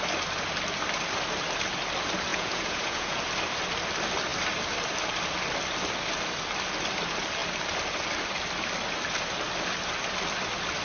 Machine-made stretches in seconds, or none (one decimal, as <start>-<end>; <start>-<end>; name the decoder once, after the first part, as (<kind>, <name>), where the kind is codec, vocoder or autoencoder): 2.3-3.2 (vocoder, Vocos)